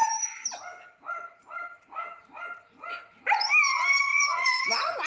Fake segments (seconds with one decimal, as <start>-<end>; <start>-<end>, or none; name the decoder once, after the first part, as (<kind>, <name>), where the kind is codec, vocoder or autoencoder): 4.1-5.1 (vocoder, Vocos)